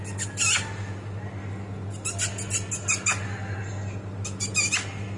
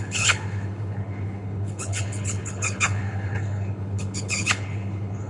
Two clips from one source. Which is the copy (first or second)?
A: second